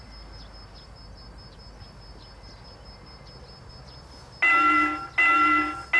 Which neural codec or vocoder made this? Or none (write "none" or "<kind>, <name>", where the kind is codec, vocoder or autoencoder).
none